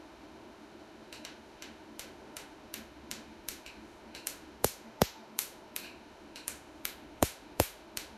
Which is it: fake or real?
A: fake